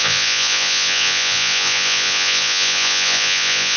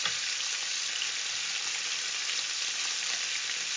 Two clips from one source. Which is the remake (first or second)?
first